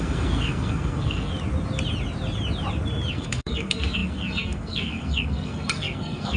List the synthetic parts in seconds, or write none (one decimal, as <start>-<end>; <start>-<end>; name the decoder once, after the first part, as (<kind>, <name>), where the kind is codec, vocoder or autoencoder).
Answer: 0.0-1.3 (codec, SNAC); 3.1-6.4